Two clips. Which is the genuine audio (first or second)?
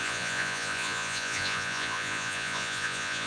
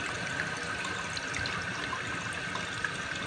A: second